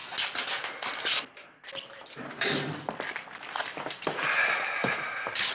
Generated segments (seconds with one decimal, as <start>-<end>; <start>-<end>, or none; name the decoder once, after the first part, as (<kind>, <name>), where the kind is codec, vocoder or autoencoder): 2.0-2.7 (vocoder, BigVGAN v2); 4.8-5.5